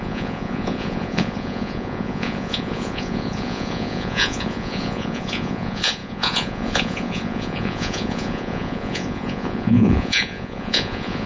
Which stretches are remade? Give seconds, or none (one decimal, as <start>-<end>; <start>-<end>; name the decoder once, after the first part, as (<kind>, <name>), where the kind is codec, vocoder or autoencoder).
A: 0.0-11.3 (vocoder, Vocos)